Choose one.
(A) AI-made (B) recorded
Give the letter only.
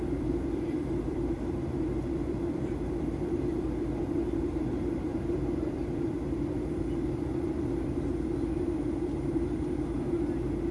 A